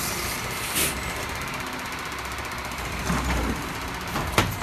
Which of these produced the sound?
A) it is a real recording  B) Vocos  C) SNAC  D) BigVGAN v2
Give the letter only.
A